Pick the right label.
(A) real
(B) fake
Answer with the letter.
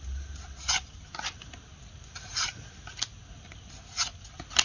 A